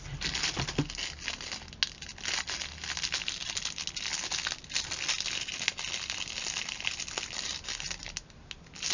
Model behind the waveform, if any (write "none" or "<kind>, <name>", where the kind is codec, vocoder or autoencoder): none